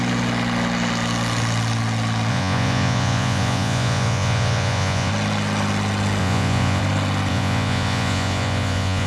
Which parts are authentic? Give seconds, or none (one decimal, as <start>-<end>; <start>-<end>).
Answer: 0.0-2.3; 5.1-6.2; 6.8-7.3